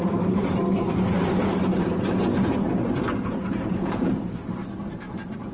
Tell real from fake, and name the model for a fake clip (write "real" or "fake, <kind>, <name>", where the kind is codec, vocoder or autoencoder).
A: fake, vocoder, BigVGAN v2